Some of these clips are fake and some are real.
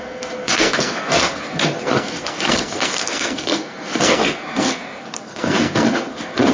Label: fake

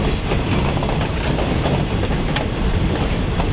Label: real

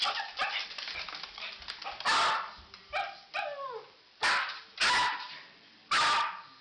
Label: real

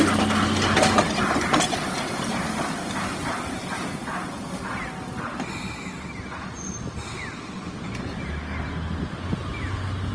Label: real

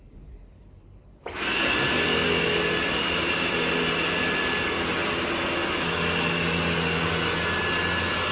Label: real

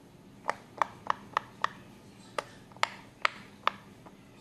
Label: real